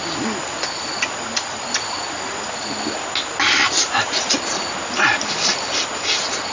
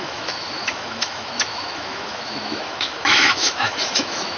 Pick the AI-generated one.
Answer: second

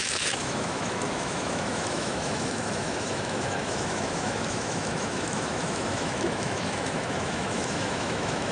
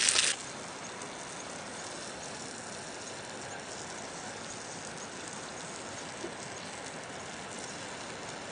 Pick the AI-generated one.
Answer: first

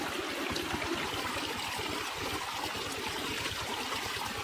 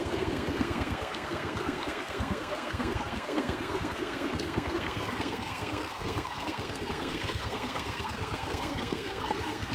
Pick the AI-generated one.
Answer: second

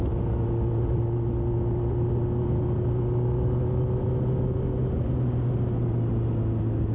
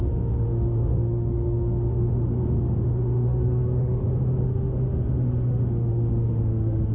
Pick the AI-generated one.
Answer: second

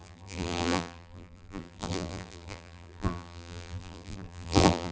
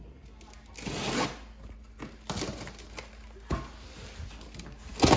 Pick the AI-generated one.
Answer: first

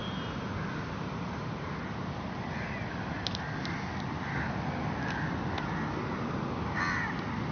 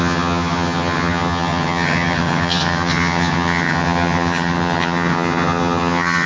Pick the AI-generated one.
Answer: second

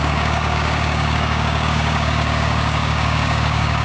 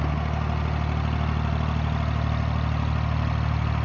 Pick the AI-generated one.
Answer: first